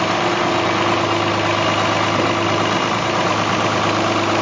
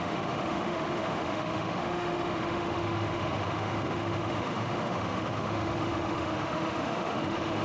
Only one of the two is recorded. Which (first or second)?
first